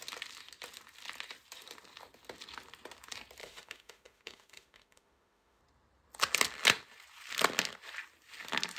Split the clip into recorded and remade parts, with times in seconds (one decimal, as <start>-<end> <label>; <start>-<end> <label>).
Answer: 0.0-3.4 recorded; 3.4-5.6 remade; 5.6-8.8 recorded